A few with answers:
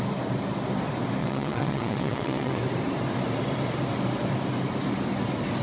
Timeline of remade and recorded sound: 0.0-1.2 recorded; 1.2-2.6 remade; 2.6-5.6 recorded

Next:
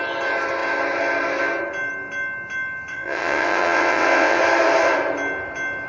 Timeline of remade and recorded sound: 0.0-2.9 recorded; 2.9-4.4 remade; 4.4-5.9 recorded

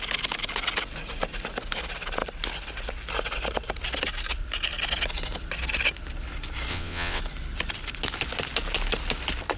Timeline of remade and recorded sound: 0.0-6.7 recorded; 6.7-7.2 remade; 7.2-9.6 recorded

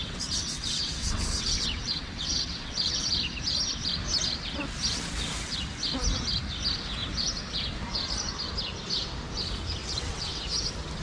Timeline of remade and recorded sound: 0.0-3.1 remade; 3.1-9.8 recorded; 9.8-10.4 remade; 10.4-11.0 recorded

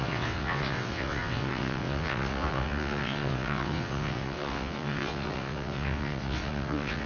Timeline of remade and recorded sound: 0.0-7.1 remade

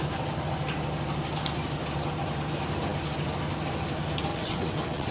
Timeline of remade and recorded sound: 0.0-4.3 recorded; 4.3-5.1 remade

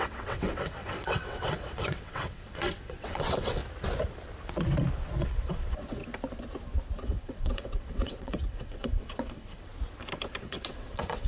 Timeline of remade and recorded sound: 0.0-3.6 remade; 3.6-5.2 recorded; 5.2-6.0 remade; 6.0-7.0 recorded; 7.0-9.7 remade; 9.7-10.4 recorded; 10.4-11.3 remade

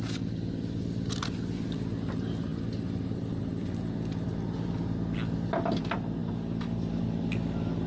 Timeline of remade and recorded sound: 0.0-7.9 recorded